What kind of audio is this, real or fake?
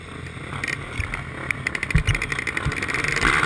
real